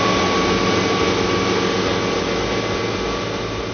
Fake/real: real